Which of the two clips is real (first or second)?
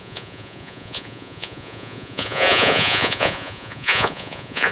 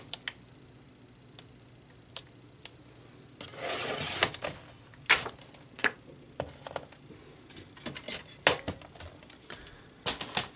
second